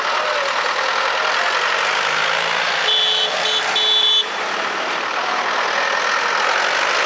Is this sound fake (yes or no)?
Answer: no